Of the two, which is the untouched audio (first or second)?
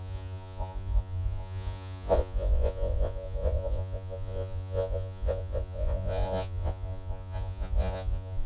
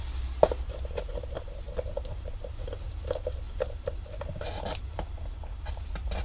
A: second